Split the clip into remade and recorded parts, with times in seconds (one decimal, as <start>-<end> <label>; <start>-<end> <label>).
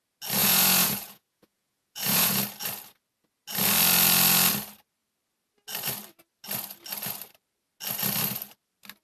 0.0-0.4 recorded; 0.4-2.4 remade; 2.4-9.0 recorded